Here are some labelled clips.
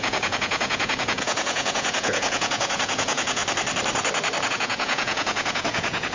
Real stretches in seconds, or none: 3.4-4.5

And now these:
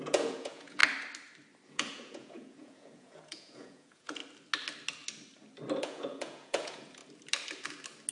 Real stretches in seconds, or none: 0.8-1.7; 4.2-5.8; 7.0-8.1

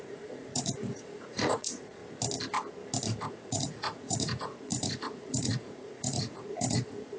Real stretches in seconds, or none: 2.0-3.3

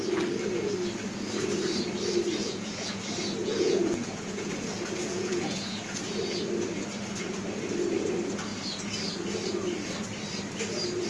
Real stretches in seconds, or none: 0.0-2.4; 3.0-3.4; 6.0-11.1

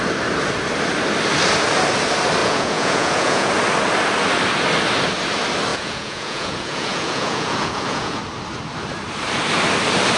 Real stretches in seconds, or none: 0.0-2.4; 3.5-5.7; 8.2-10.2

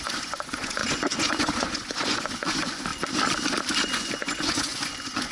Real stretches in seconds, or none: 2.9-3.9

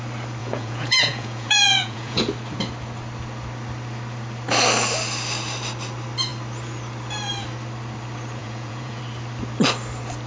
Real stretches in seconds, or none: 0.0-0.4; 2.2-8.4; 9.0-10.3